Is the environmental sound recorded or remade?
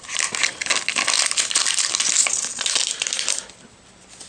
recorded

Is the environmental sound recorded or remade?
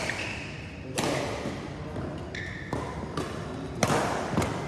recorded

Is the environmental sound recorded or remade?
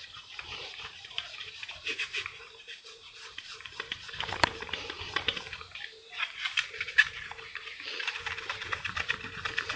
remade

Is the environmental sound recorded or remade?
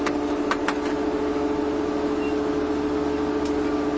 recorded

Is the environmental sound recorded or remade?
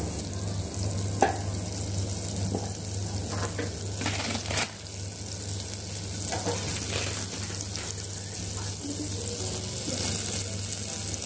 recorded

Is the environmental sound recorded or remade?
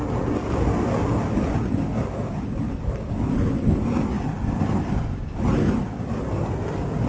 recorded